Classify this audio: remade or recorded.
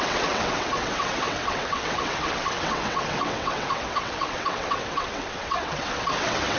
remade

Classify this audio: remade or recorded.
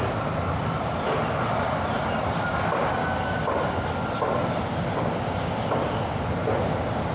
recorded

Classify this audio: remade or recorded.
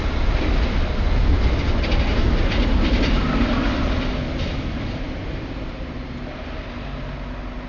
recorded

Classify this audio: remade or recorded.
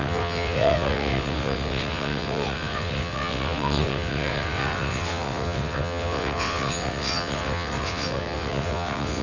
remade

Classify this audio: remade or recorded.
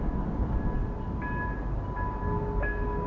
recorded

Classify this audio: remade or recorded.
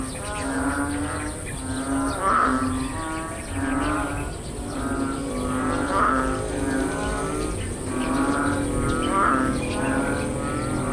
recorded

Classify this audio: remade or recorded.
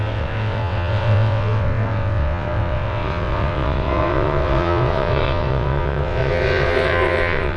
remade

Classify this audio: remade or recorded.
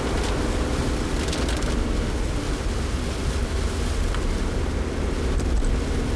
recorded